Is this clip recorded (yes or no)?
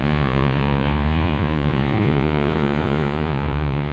no